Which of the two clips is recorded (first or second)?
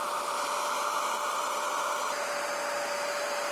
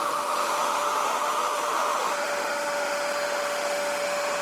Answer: first